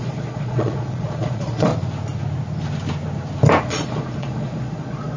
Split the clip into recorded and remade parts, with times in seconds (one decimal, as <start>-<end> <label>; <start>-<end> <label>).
0.0-1.7 remade; 1.7-3.6 recorded; 3.6-5.2 remade